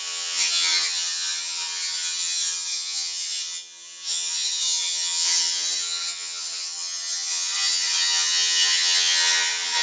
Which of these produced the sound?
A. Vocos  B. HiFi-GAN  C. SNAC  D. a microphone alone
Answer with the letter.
B